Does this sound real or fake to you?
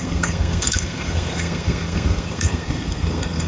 fake